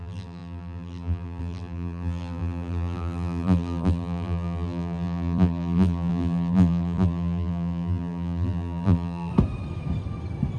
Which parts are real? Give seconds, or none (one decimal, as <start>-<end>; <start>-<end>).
9.3-10.6